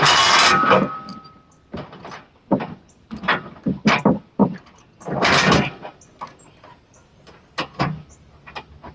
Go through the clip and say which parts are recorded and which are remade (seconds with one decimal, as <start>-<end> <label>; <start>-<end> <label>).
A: 0.0-8.9 recorded